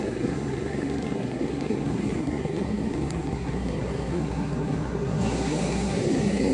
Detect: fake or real fake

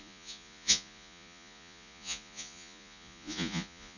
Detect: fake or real fake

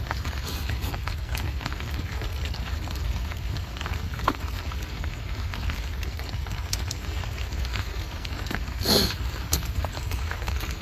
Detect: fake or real fake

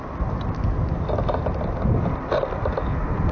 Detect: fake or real real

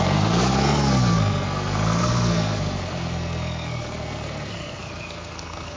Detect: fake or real fake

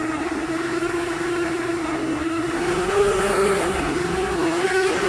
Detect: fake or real fake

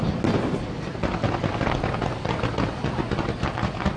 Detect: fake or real real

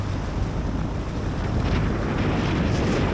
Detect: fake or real real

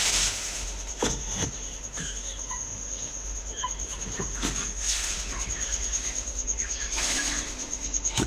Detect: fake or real fake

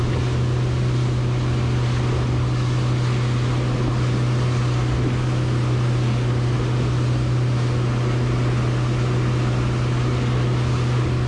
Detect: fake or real real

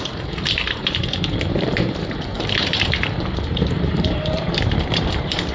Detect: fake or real fake